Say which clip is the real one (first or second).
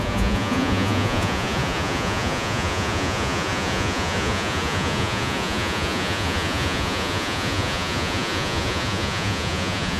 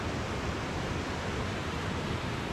second